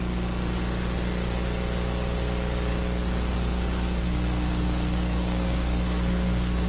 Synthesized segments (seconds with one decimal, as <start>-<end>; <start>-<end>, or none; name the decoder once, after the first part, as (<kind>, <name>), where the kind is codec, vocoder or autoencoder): 4.0-6.7 (codec, SNAC)

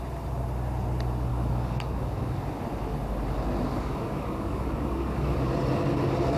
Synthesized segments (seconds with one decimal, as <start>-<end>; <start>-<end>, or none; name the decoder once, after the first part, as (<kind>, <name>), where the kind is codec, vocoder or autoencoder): 1.3-2.6 (codec, DAC); 3.7-5.5

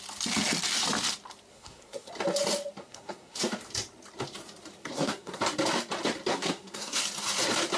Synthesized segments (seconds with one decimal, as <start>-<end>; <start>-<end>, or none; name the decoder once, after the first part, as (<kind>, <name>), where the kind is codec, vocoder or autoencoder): 1.5-2.1 (codec, SNAC); 2.8-3.4; 4.8-5.4; 6.3-7.0